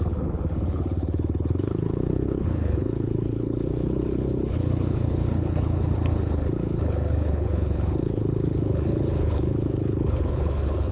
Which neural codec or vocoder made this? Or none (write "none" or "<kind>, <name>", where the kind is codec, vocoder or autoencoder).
codec, HILCodec